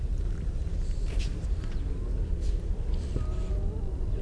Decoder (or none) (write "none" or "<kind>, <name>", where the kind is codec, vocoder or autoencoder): none